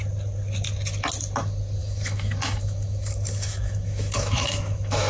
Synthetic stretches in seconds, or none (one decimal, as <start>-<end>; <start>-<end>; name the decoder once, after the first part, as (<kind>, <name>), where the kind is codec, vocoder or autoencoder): 1.8-5.1 (autoencoder, DAC-VAE)